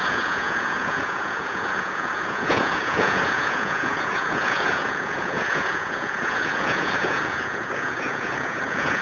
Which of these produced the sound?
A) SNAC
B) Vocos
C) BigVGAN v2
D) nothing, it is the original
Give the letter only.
B